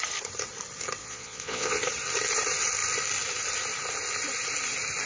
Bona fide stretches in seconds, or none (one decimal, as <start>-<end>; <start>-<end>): 0.0-1.0; 1.8-5.1